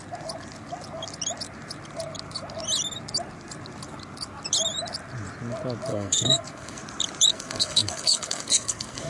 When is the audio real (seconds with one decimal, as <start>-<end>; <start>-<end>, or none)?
0.0-5.9; 6.8-7.3